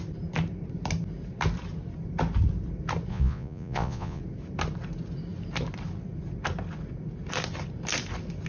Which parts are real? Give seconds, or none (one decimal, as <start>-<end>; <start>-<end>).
0.0-3.1; 4.2-8.5